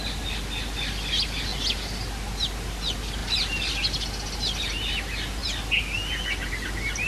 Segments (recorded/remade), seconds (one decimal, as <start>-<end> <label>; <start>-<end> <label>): 0.0-7.1 recorded